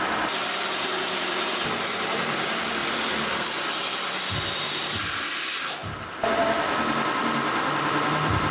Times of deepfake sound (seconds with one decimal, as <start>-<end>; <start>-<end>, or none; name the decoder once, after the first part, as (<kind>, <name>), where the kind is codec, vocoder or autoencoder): none